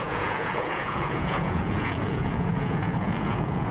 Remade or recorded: remade